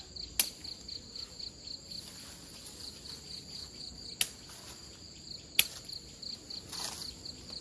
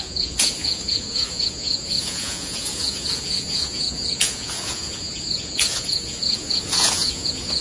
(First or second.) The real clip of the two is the first